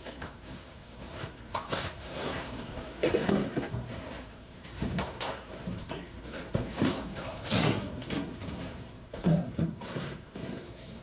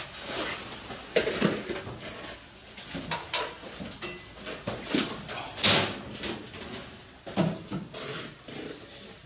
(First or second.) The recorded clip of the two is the second